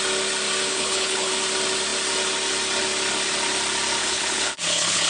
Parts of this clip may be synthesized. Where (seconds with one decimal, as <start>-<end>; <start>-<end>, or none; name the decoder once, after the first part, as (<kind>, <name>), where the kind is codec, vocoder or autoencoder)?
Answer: 0.7-1.3 (codec, HILCodec); 4.0-5.1